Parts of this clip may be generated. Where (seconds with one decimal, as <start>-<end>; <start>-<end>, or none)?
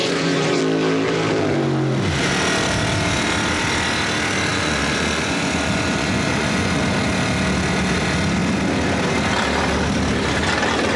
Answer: 0.0-0.6; 4.5-6.8